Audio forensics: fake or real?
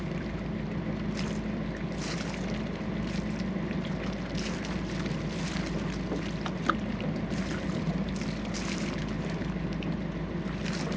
real